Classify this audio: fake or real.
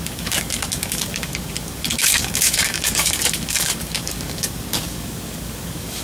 fake